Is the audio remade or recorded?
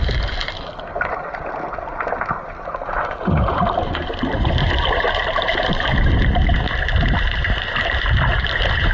recorded